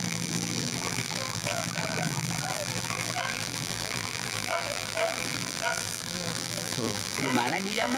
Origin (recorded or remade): remade